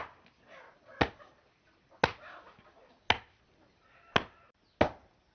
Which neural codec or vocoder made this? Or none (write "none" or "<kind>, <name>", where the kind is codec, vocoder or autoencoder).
none